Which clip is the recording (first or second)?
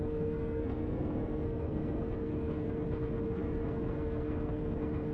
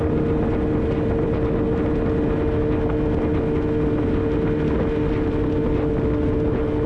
second